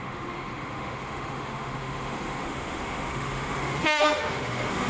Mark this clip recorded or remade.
remade